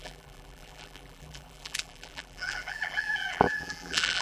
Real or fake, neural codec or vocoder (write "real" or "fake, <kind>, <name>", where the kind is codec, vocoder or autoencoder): fake, vocoder, BigVGAN v2